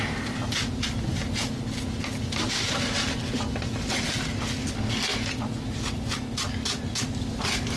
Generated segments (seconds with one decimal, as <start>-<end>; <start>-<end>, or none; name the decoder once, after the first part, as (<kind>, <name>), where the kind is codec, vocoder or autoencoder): none